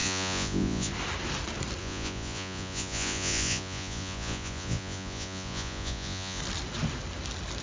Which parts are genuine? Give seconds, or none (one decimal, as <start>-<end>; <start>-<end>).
0.9-1.8; 6.4-7.6